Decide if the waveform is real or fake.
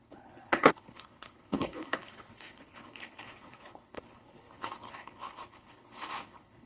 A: fake